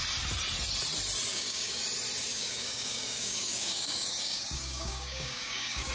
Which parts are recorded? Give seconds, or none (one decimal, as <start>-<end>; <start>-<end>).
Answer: 0.0-1.3; 1.8-2.3